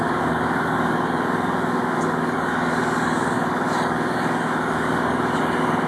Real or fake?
fake